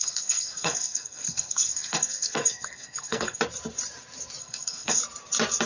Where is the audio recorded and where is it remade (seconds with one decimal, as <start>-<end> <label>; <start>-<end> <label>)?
0.0-3.4 remade; 3.4-4.4 recorded; 4.4-5.0 remade; 5.0-5.7 recorded